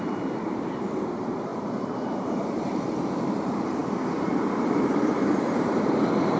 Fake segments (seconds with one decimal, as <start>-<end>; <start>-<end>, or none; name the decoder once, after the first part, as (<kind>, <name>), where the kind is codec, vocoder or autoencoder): 0.0-3.8 (vocoder, BigVGAN v2); 4.8-6.4